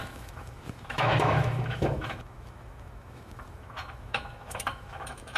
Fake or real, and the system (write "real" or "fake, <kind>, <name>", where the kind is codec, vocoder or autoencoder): fake, autoencoder, DAC-VAE